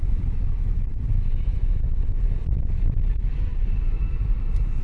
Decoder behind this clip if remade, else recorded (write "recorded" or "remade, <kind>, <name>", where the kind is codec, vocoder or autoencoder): remade, vocoder, BigVGAN v2